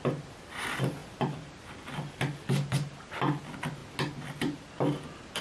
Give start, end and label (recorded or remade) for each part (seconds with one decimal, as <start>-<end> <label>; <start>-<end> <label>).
0.0-5.4 recorded